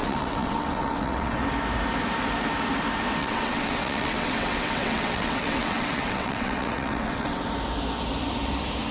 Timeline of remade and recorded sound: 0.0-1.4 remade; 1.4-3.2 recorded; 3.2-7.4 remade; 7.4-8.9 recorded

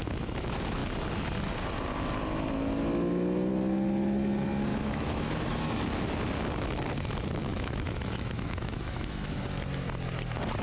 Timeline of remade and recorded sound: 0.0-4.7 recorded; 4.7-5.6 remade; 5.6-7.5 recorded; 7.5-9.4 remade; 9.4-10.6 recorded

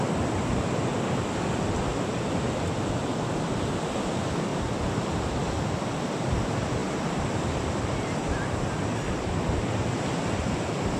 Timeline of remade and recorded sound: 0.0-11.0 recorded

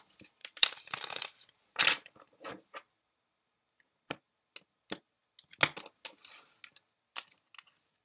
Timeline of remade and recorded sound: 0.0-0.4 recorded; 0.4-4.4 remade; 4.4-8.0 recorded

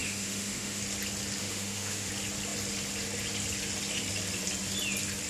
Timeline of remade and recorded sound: 0.0-0.8 remade; 0.8-1.4 recorded; 1.4-2.1 remade; 2.1-5.3 recorded